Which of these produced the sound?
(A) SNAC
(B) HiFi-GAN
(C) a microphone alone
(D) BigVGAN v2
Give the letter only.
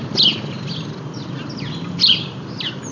C